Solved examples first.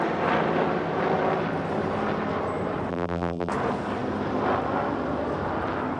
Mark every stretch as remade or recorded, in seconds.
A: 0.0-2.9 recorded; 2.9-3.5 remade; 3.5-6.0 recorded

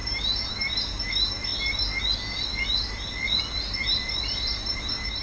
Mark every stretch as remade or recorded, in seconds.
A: 0.0-1.5 remade; 1.5-3.8 recorded; 3.8-5.2 remade